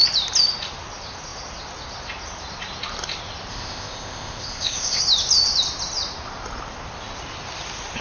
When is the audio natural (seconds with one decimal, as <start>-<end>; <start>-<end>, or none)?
0.0-3.5; 5.0-8.0